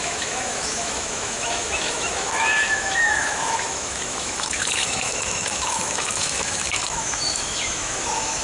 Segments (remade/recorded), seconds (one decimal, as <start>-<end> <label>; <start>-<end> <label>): 0.0-8.4 remade